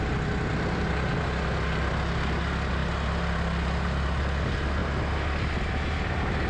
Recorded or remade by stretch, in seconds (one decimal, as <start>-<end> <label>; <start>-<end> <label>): 0.0-6.5 recorded